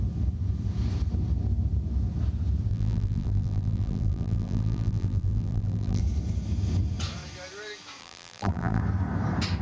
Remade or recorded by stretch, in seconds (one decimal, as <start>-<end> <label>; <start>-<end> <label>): 0.0-2.7 recorded; 2.7-6.0 remade; 6.0-8.0 recorded; 8.0-8.8 remade; 8.8-9.6 recorded